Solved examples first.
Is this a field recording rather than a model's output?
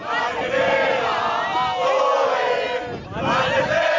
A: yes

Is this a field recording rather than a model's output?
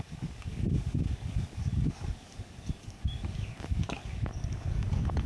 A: no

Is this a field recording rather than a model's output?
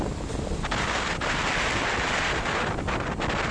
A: yes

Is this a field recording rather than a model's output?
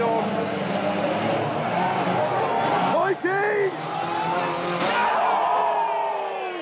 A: yes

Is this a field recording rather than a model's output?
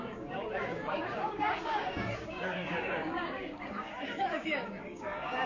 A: no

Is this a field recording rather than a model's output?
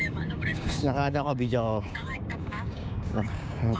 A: no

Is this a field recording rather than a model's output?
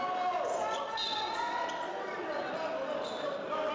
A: yes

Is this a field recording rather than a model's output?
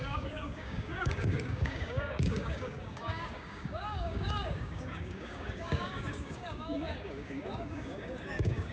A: no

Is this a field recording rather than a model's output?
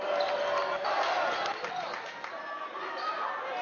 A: yes